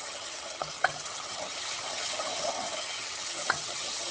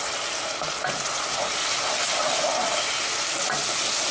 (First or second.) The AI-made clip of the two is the first